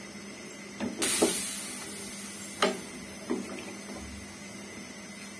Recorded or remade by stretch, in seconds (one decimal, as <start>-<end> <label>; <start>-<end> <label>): 0.0-5.4 recorded